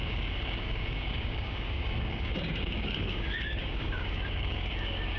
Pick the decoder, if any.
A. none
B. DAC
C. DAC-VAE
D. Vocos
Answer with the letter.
B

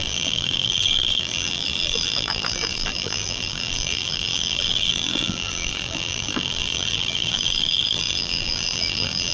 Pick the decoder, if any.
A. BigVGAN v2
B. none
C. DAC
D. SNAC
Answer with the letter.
A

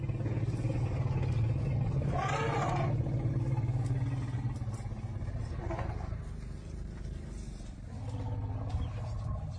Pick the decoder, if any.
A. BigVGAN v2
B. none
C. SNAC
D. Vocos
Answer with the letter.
B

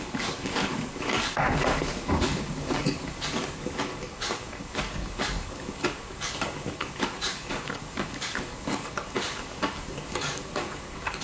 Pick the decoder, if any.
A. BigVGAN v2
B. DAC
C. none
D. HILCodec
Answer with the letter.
B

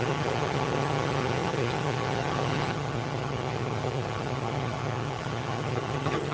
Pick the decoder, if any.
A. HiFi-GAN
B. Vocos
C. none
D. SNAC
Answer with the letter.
A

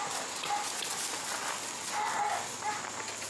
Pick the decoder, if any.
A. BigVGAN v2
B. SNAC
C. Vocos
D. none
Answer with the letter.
D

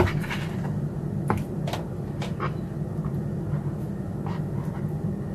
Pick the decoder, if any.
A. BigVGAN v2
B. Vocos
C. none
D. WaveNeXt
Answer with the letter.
C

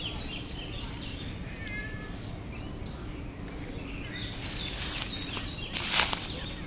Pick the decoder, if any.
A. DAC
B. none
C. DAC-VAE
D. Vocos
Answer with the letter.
B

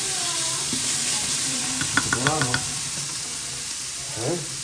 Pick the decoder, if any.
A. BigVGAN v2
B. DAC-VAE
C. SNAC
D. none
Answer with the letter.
A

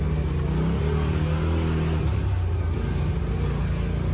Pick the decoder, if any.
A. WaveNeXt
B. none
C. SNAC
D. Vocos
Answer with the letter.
B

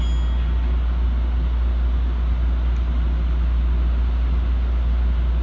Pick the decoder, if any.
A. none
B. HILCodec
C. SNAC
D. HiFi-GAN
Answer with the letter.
A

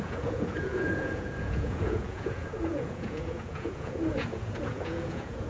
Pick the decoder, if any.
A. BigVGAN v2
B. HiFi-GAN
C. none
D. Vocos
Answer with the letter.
D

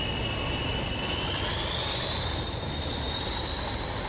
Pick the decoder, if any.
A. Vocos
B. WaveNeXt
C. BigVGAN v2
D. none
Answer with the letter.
C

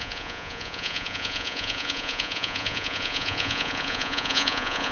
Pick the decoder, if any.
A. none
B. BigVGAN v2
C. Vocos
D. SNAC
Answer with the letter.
C